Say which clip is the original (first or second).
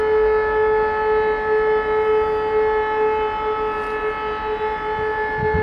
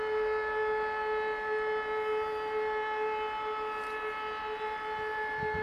first